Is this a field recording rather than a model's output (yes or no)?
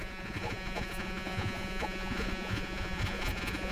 no